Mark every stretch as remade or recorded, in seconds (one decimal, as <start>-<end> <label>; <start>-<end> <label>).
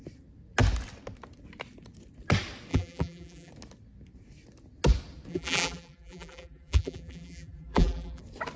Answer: 0.0-2.7 recorded; 2.7-3.5 remade; 3.5-5.3 recorded; 5.3-8.2 remade; 8.2-8.6 recorded